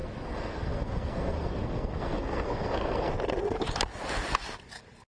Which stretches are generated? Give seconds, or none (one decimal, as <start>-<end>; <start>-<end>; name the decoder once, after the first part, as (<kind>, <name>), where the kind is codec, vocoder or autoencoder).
0.0-3.1 (codec, SNAC)